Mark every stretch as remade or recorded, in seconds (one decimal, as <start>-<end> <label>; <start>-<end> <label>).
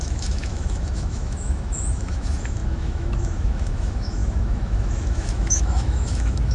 0.0-6.5 remade